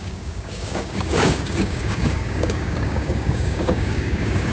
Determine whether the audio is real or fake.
fake